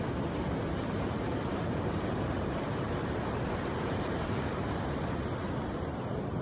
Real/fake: fake